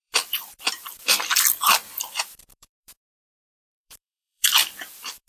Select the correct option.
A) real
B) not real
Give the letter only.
B